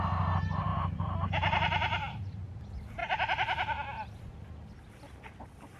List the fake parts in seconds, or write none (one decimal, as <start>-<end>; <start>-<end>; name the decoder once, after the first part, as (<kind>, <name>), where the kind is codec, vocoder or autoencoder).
0.7-2.4 (vocoder, BigVGAN v2); 3.0-4.2